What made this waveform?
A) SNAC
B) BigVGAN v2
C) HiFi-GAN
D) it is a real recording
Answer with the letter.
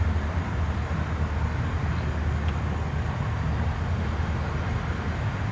D